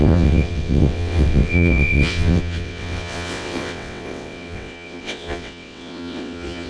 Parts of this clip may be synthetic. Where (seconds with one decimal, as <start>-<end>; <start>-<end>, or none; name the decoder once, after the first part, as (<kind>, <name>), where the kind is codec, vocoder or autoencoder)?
0.0-6.7 (vocoder, WaveNeXt)